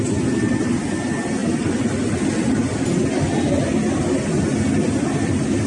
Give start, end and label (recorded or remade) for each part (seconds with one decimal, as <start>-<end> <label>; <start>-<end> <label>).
0.0-5.7 recorded